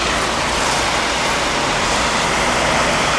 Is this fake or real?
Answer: real